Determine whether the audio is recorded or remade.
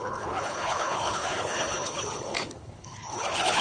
remade